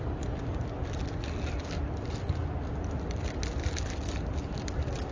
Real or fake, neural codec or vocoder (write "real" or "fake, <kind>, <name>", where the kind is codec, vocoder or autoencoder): real